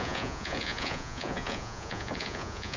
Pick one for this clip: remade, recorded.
remade